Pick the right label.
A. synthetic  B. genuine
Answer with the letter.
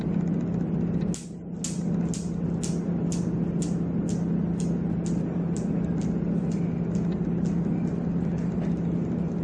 B